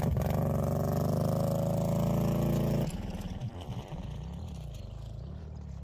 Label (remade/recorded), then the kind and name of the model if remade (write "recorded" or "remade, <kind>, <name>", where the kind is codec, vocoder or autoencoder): recorded